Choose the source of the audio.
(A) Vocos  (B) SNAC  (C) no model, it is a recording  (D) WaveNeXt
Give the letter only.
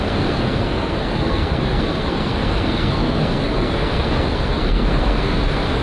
B